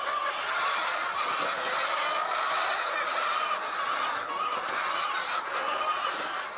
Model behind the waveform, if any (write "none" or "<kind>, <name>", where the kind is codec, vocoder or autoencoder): none